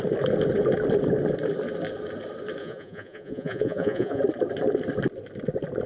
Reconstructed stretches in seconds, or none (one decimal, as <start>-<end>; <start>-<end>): 2.6-4.2